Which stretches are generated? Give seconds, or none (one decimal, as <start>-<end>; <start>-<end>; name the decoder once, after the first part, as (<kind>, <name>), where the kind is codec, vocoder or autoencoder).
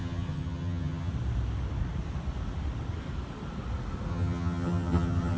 0.0-1.1 (vocoder, HiFi-GAN); 4.1-5.4